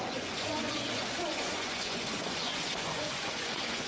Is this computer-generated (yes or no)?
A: yes